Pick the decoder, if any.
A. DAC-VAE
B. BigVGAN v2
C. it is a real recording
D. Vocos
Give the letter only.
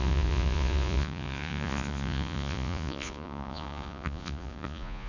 D